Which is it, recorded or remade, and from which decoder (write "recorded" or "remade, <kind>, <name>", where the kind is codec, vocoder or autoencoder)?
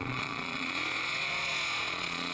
remade, vocoder, Vocos